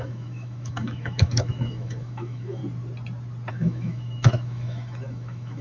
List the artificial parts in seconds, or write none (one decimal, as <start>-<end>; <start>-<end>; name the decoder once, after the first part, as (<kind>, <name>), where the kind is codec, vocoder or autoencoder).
0.0-2.6 (autoencoder, DAC-VAE); 3.5-5.6